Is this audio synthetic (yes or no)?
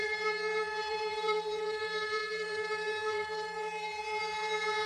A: yes